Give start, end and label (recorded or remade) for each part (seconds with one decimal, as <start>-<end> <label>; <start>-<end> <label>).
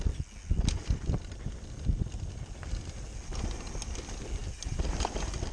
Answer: 0.0-4.4 recorded; 4.4-4.9 remade; 4.9-5.5 recorded